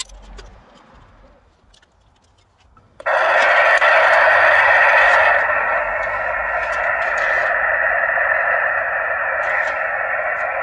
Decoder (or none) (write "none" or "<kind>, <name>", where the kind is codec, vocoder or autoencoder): none